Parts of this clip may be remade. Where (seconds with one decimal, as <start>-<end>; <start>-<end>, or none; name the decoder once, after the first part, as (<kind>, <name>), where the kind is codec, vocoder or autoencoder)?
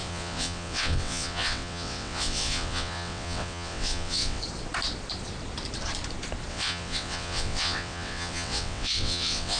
0.0-4.4 (vocoder, WaveNeXt); 6.5-9.6